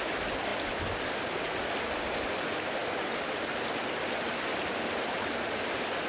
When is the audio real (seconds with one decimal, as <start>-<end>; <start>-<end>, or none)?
0.0-6.1